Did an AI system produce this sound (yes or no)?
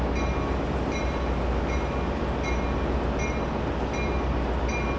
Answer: no